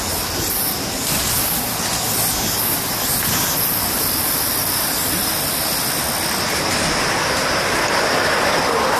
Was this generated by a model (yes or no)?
no